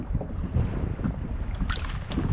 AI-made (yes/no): yes